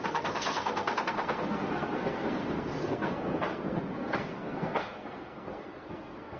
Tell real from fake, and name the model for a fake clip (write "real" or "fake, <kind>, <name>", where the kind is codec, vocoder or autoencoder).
fake, codec, SNAC